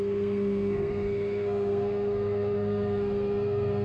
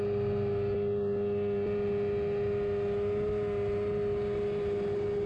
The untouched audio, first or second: second